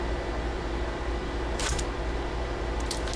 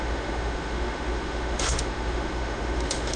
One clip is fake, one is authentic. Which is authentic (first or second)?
first